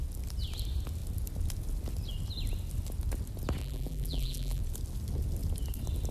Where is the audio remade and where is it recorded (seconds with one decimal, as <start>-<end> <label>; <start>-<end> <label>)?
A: 0.0-3.6 recorded; 3.6-4.6 remade; 4.6-6.1 recorded